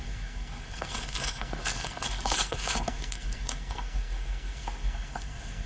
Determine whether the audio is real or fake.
fake